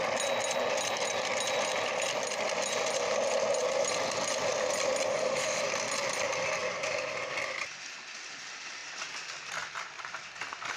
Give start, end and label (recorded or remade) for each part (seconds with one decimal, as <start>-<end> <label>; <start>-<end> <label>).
0.0-5.1 recorded; 5.1-5.6 remade; 5.6-10.8 recorded